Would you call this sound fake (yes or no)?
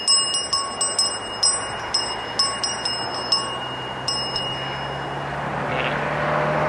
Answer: no